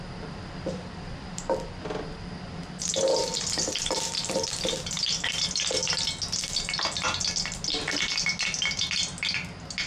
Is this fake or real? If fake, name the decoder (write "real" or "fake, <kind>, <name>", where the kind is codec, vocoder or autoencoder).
real